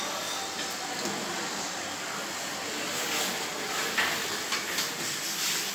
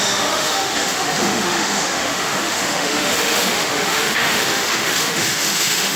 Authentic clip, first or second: first